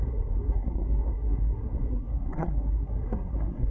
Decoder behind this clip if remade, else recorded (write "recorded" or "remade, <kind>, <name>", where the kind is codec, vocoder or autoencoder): remade, codec, SNAC